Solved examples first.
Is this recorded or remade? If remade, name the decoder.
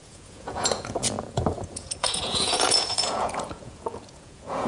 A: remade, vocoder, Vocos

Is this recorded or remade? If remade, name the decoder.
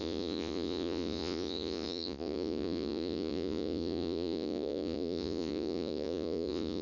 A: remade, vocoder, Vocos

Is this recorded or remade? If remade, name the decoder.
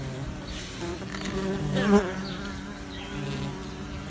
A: recorded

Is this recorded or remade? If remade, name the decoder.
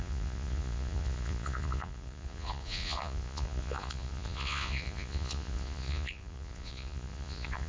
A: remade, vocoder, Vocos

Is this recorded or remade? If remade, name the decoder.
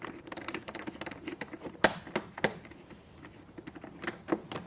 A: recorded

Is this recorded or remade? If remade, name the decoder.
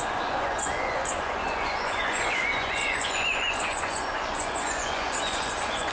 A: remade, vocoder, Vocos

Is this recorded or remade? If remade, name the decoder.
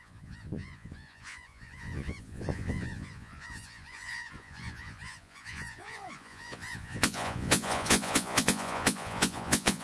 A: remade, vocoder, Vocos